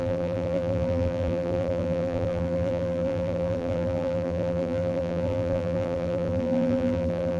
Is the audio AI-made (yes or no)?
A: yes